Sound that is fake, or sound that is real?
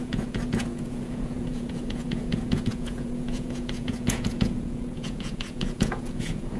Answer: fake